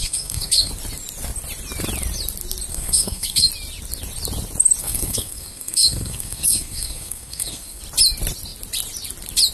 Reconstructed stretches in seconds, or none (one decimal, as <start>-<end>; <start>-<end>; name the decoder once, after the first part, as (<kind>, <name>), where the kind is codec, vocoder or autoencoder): 0.0-0.7 (codec, SNAC); 2.7-3.5; 4.8-7.8